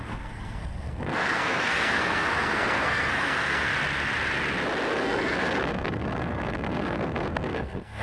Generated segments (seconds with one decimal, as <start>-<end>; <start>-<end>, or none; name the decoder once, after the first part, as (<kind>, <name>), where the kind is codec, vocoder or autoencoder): 0.0-3.7 (codec, SNAC); 4.9-8.0